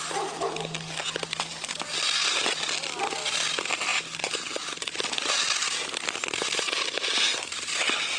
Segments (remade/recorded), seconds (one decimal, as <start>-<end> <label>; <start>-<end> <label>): 0.0-8.2 recorded